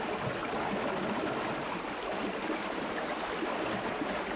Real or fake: real